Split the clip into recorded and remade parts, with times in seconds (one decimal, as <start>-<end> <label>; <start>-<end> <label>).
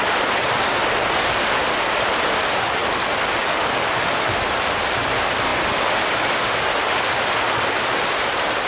0.0-2.8 recorded; 2.8-4.6 remade; 4.6-8.7 recorded